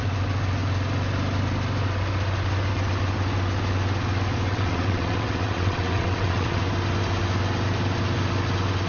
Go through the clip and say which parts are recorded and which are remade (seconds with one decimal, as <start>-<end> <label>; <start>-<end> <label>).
0.0-4.5 recorded; 4.5-6.6 remade; 6.6-8.9 recorded